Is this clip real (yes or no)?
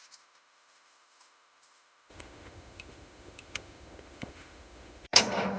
no